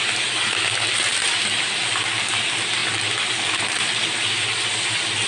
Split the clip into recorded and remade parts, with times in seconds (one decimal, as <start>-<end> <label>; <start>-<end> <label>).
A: 0.0-5.3 recorded